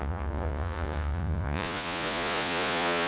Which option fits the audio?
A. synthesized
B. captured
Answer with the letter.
A